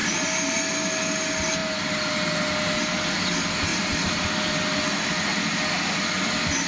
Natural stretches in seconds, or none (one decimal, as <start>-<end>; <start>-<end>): 0.6-3.7; 4.2-6.7